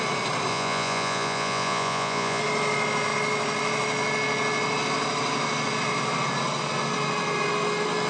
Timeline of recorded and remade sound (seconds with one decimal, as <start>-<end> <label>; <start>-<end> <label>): 0.0-0.5 recorded; 0.5-2.4 remade; 2.4-8.1 recorded